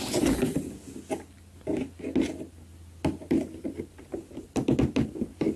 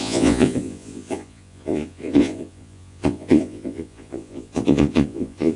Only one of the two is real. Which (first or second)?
first